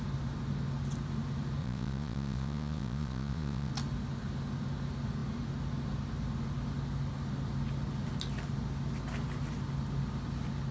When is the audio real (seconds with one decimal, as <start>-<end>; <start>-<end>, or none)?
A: 0.0-1.6; 3.7-10.7